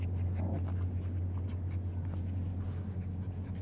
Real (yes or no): yes